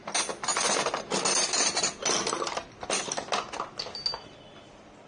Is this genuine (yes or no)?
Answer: yes